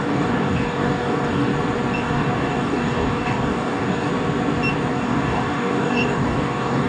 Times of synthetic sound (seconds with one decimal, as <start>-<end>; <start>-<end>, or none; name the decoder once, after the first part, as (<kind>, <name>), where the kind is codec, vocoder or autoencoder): 0.0-1.5 (codec, DAC); 2.0-4.1; 4.9-6.9